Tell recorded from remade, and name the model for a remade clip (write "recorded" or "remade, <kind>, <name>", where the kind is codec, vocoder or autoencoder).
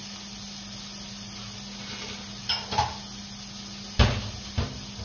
recorded